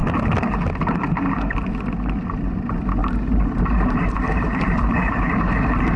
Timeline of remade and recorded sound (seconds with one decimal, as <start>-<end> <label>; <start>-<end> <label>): 0.0-3.0 recorded; 3.0-5.5 remade; 5.5-6.0 recorded

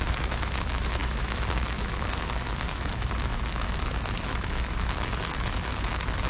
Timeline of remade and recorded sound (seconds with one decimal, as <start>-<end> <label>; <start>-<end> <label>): 0.0-6.3 remade

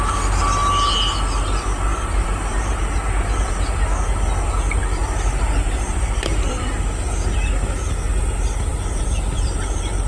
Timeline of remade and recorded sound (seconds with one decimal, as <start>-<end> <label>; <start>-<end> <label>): 0.0-1.9 recorded; 1.9-3.5 remade; 3.5-5.0 recorded; 5.0-6.6 remade; 6.6-8.7 recorded; 8.7-10.1 remade